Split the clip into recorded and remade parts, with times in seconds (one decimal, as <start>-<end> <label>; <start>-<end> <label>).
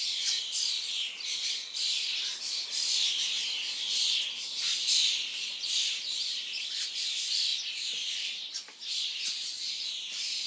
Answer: 0.0-5.3 recorded; 5.3-6.7 remade; 6.7-10.5 recorded